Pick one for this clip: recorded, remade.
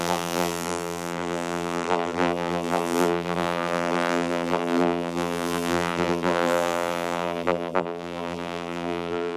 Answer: remade